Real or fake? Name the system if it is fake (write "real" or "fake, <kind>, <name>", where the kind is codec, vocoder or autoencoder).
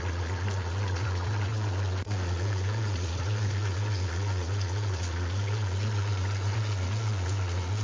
fake, vocoder, Vocos